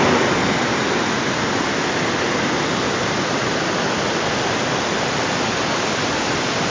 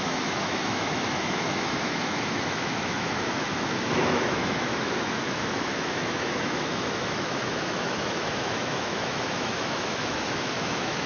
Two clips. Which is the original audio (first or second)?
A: first